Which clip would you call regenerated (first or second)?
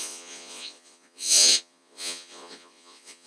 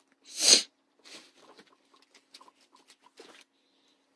first